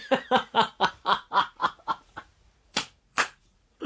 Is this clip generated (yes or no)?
yes